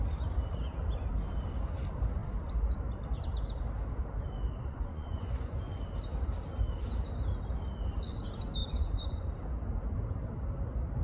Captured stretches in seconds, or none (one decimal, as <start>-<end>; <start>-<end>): 0.0-4.7; 5.6-8.6; 9.3-11.0